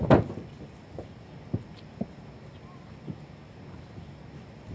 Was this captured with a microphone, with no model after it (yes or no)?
yes